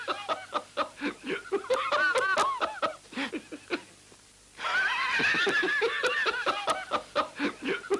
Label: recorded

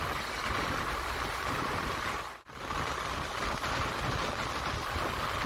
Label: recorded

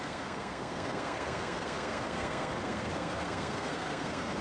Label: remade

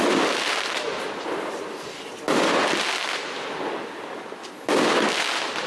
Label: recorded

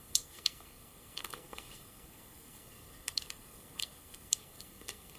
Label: remade